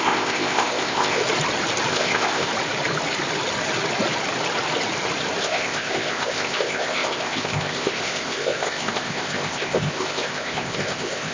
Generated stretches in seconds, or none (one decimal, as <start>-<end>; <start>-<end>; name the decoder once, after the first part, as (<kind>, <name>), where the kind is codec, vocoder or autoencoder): 0.0-1.2 (codec, ZipCodec); 1.9-2.5; 5.4-11.3